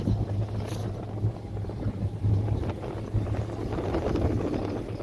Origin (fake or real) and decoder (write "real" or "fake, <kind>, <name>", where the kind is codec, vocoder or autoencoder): real